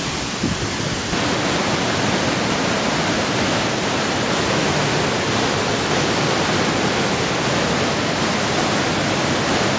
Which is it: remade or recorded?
recorded